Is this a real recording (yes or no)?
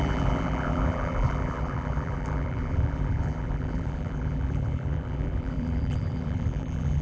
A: no